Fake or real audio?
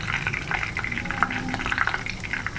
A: real